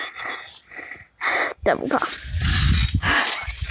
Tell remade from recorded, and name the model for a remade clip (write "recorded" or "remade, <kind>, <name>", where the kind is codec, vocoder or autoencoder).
recorded